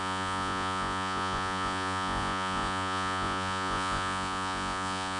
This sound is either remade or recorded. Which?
remade